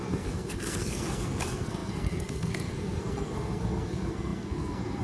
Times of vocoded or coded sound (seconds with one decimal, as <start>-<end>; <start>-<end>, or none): 0.0-5.0